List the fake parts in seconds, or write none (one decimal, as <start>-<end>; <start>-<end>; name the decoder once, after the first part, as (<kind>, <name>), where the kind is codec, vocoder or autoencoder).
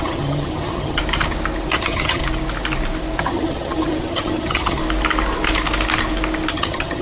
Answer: 0.0-1.0 (vocoder, HiFi-GAN); 1.7-2.2; 3.2-4.8; 6.5-7.0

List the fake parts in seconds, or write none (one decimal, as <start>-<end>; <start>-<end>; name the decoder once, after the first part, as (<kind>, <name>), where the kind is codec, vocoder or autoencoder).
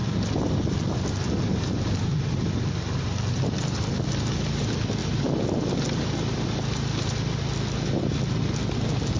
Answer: none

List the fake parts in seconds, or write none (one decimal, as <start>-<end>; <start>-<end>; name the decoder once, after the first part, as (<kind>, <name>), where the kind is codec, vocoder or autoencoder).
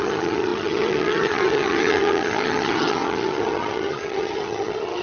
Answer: 0.0-5.0 (vocoder, HiFi-GAN)